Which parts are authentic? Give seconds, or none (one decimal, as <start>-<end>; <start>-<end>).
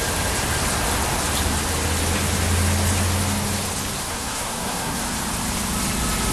0.0-4.1; 5.0-6.3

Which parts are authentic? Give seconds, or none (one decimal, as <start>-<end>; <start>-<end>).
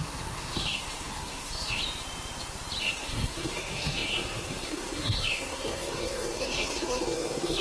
1.8-2.8